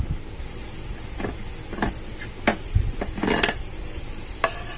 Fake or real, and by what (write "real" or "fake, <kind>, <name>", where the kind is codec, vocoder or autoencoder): real